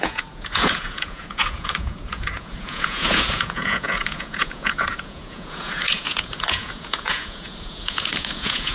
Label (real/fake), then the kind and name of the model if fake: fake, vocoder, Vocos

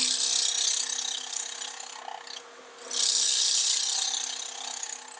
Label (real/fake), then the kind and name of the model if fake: real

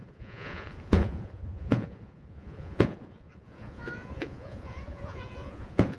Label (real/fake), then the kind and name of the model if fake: fake, vocoder, Vocos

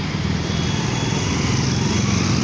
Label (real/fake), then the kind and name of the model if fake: real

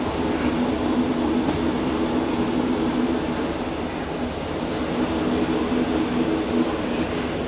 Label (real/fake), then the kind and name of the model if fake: real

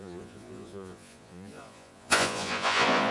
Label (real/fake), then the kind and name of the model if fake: fake, vocoder, Vocos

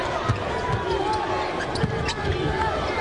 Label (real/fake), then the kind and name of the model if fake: real